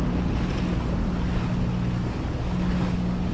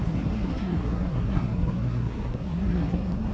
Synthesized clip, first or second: second